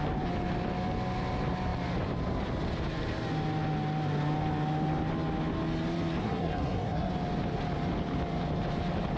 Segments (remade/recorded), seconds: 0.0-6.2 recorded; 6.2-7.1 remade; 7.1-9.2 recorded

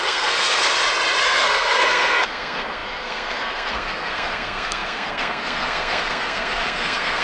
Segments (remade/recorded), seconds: 0.0-0.6 remade; 0.6-1.2 recorded; 1.2-7.2 remade

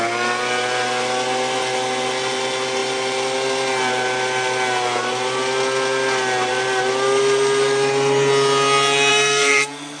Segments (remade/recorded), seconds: 0.0-9.1 recorded; 9.1-10.0 remade

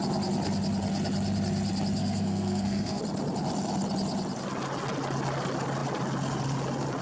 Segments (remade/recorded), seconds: 0.0-2.0 recorded; 2.0-3.0 remade; 3.0-7.0 recorded

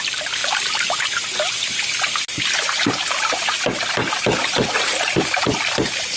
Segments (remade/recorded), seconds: 0.0-6.2 recorded